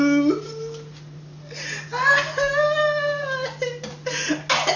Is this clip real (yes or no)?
yes